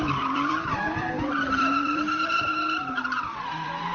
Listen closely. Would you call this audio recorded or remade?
remade